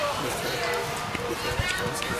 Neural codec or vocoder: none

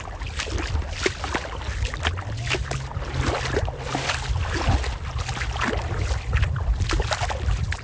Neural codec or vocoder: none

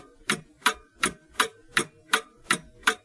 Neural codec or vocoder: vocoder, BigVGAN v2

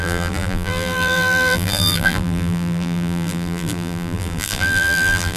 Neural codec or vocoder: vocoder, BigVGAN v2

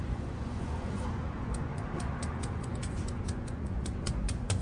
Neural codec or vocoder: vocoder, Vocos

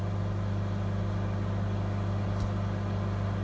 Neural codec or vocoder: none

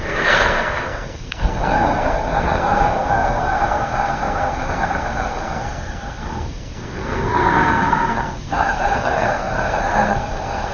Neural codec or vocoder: codec, SNAC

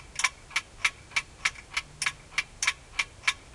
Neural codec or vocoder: none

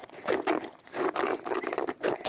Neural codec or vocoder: none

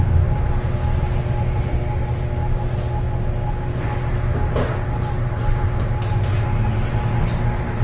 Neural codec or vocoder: none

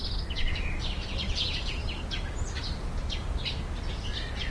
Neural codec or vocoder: none